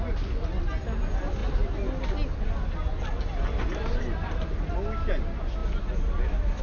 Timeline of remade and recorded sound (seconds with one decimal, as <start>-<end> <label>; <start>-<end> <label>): 0.0-6.6 recorded